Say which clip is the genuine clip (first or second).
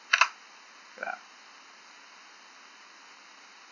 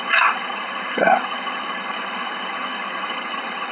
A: first